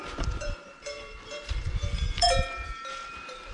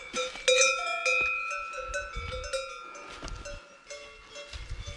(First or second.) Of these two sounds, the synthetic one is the first